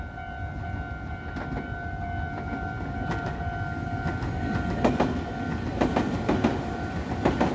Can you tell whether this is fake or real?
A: real